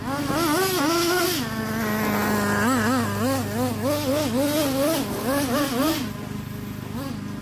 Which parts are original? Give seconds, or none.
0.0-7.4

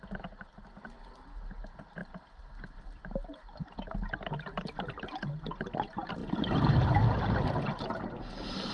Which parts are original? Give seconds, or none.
0.0-8.7

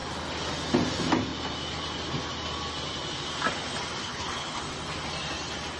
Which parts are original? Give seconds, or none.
0.0-4.0; 4.6-5.8

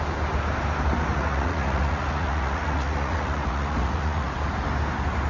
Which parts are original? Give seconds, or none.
0.0-1.1; 4.3-5.3